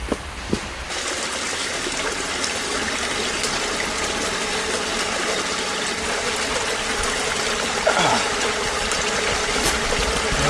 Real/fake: real